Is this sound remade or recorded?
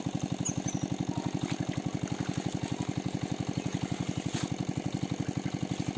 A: recorded